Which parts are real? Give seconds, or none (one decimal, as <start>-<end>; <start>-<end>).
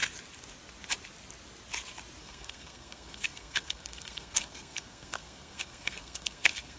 0.0-2.2